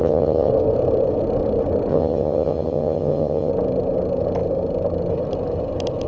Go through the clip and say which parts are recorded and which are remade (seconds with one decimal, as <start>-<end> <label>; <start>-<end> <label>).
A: 0.0-0.5 remade; 0.5-1.9 recorded; 1.9-3.5 remade; 3.5-6.1 recorded